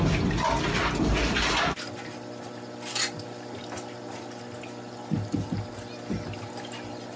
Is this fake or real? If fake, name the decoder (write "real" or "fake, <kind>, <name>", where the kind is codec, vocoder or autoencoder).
real